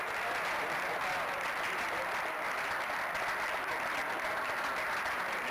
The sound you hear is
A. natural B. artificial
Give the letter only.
A